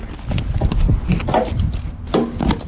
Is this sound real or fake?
real